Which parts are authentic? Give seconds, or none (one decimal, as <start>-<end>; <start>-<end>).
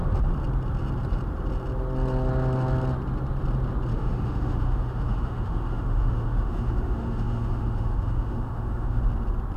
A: 0.0-3.9; 9.0-9.6